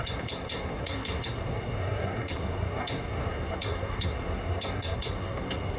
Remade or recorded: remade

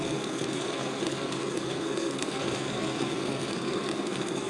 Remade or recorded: remade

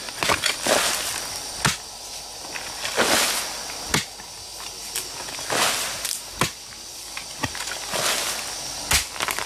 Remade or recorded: recorded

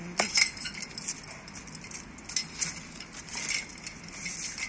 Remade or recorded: recorded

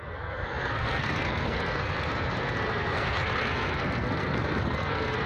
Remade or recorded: remade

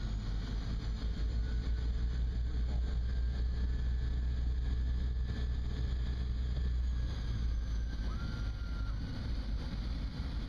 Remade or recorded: recorded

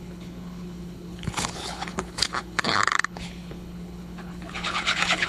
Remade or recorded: remade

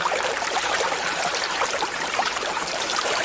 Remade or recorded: remade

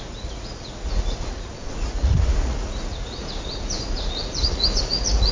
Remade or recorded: remade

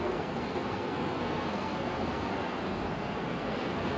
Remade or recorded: remade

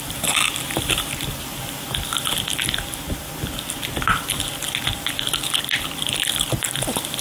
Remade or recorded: remade